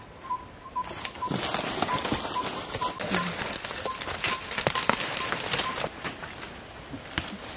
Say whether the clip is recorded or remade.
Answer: recorded